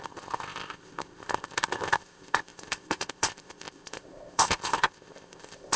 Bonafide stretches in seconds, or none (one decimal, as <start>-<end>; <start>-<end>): none